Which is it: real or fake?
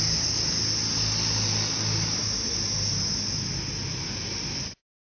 real